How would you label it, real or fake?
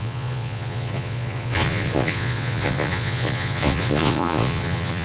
fake